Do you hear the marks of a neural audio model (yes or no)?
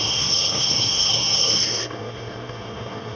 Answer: yes